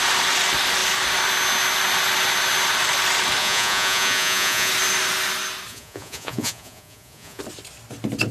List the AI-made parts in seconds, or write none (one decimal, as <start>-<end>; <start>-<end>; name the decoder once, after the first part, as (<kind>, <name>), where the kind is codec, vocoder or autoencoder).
3.4-4.7 (vocoder, Vocos); 5.7-7.4